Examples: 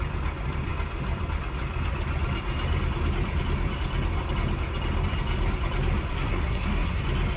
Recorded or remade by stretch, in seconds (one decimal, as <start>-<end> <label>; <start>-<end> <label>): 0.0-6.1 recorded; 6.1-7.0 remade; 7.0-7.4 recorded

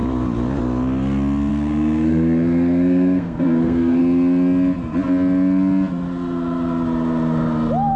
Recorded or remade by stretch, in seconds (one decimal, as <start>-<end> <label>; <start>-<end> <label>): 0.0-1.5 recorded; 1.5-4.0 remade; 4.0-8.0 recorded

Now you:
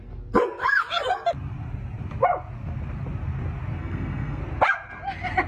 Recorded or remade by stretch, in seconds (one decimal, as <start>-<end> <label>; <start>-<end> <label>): 0.0-3.8 recorded; 3.8-4.4 remade; 4.4-5.5 recorded